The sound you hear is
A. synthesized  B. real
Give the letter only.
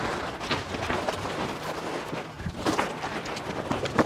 B